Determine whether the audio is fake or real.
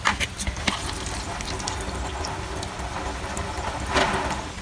real